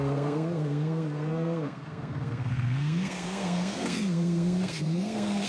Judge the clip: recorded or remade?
remade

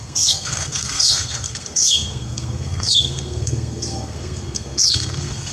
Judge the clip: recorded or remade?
remade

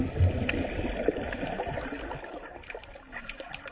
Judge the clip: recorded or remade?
recorded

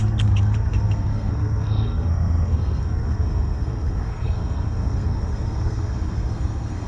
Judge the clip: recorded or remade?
remade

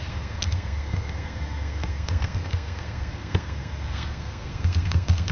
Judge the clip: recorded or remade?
remade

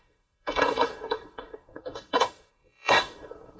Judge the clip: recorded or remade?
remade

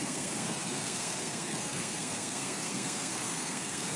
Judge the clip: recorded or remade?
remade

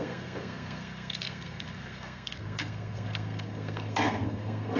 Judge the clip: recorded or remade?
remade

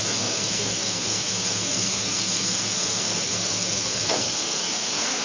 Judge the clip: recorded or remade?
remade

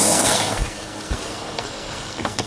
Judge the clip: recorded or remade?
remade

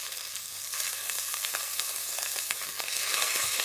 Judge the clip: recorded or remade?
remade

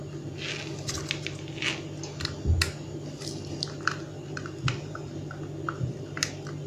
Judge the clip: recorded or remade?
recorded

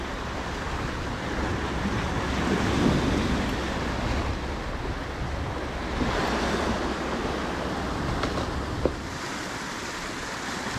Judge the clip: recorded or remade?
recorded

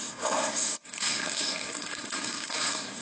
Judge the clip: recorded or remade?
remade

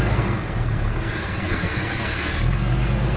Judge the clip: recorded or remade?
remade